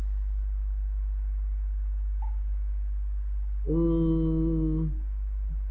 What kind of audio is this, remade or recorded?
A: recorded